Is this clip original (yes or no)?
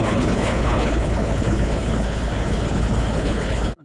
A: no